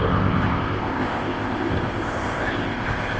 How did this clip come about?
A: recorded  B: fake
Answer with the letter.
B